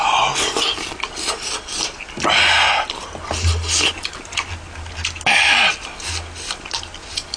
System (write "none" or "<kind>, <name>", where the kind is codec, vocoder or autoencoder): none